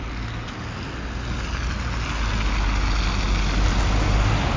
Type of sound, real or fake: real